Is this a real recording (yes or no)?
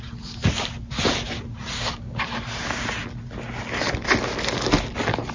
yes